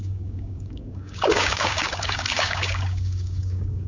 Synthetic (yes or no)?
yes